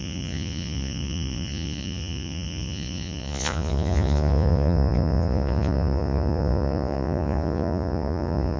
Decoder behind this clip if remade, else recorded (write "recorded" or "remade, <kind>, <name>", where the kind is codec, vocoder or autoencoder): remade, vocoder, Vocos